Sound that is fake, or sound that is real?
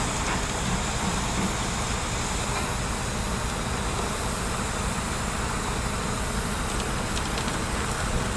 real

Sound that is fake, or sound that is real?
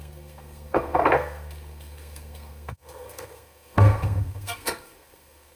fake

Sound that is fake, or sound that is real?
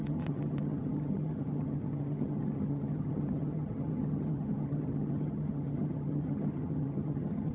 fake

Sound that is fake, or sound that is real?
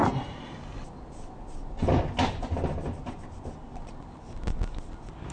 real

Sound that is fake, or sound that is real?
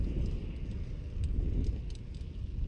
real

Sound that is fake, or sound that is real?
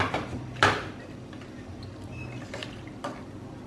fake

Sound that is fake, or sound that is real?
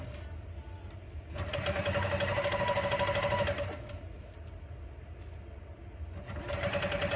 real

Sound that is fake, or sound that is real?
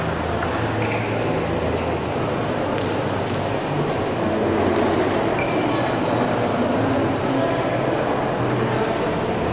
real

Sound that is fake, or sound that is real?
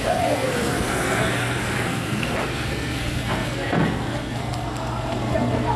fake